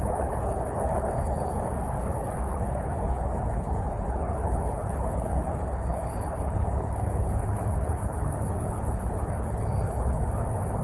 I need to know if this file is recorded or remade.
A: remade